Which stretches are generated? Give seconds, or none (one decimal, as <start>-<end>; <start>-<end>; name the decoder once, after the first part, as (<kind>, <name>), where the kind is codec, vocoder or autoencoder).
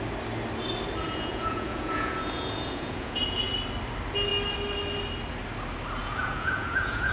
1.0-3.5 (vocoder, Vocos); 6.0-7.1